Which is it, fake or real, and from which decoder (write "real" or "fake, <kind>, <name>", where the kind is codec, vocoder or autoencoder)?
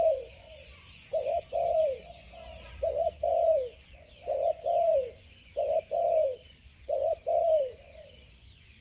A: fake, vocoder, Vocos